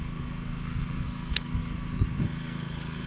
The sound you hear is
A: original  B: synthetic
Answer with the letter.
B